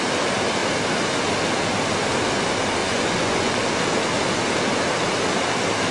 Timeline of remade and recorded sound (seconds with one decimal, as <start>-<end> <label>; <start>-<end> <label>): 0.0-2.8 recorded; 2.8-3.5 remade; 3.5-5.9 recorded